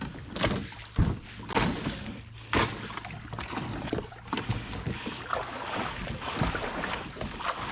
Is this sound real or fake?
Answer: real